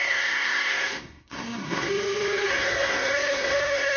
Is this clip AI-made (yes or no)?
yes